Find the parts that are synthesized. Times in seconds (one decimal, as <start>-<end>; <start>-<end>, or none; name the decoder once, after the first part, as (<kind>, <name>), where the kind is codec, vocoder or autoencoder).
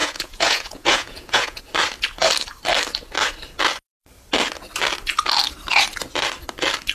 0.0-1.6 (vocoder, Vocos)